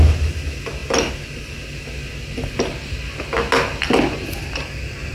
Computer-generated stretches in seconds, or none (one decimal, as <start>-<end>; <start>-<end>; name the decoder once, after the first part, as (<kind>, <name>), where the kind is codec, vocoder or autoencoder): none